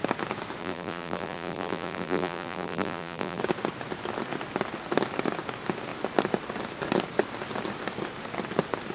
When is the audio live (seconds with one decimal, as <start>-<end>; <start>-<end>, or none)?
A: 0.0-0.6; 3.4-8.9